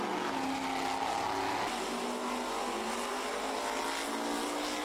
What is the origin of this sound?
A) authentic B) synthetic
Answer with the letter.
A